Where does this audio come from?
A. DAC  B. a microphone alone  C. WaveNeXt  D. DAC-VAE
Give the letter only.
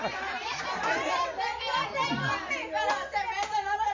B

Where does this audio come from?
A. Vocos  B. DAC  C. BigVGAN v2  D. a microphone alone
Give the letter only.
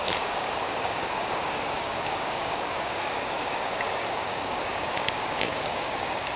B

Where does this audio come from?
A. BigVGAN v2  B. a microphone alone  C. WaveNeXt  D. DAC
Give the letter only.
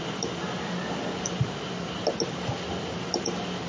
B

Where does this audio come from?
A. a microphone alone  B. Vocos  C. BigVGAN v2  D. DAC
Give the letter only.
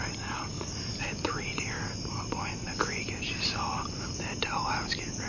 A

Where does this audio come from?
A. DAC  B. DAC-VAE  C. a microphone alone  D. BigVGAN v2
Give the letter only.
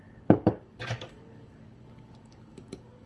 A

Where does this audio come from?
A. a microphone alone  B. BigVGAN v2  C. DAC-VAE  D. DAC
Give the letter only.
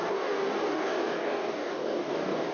D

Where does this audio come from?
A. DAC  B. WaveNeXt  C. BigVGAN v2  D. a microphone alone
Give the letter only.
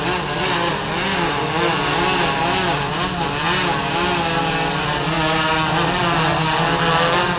D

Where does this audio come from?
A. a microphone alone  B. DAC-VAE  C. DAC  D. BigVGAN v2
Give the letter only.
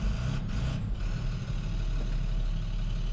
A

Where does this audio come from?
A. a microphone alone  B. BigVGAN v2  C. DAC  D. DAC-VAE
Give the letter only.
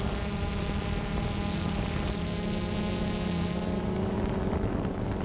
A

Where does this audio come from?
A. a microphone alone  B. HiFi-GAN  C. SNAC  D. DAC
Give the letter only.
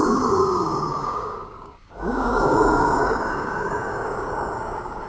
D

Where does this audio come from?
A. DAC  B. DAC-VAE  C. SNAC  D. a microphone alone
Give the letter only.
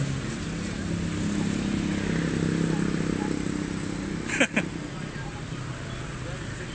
D